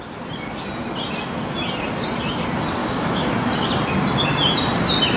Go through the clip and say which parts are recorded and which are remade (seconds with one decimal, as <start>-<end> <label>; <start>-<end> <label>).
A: 0.0-2.8 recorded; 2.8-3.3 remade; 3.3-5.2 recorded